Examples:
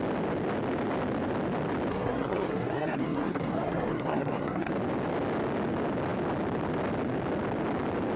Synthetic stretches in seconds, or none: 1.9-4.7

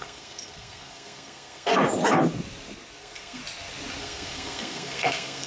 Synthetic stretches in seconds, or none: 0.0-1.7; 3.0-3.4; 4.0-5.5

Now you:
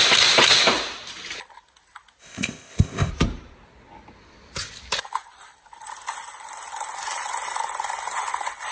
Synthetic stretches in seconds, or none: 2.2-3.1

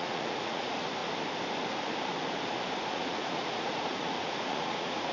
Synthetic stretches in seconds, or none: 0.0-1.0; 2.9-5.1

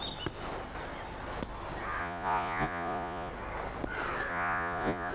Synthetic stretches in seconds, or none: 2.0-3.3; 4.3-5.1

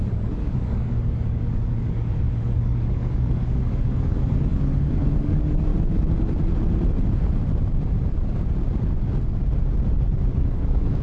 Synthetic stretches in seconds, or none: 0.0-5.7; 10.4-11.0

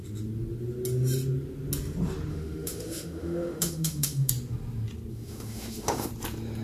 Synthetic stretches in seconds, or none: 2.3-4.3; 5.1-6.1